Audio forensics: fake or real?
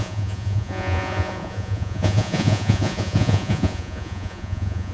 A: fake